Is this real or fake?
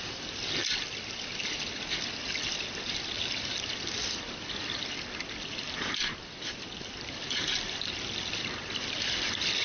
fake